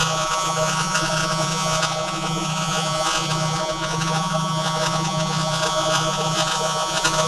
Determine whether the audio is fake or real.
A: fake